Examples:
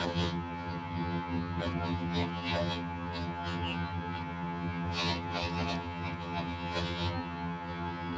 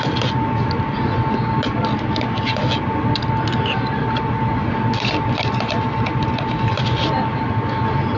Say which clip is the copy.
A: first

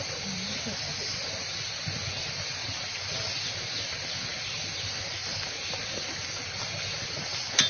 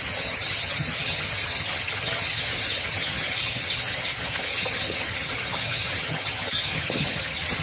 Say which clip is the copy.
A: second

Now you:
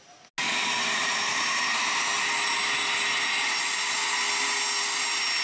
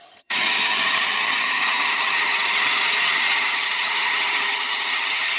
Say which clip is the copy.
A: second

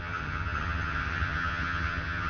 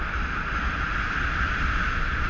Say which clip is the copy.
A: first